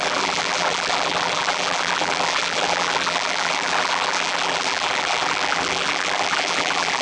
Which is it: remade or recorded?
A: remade